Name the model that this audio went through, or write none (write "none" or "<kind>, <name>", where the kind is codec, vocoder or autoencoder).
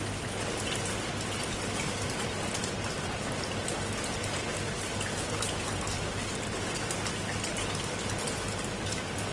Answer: none